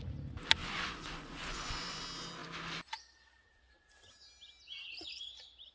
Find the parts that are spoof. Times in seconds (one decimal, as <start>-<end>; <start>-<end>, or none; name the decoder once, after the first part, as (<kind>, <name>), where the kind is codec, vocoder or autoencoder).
0.6-2.0 (vocoder, Vocos)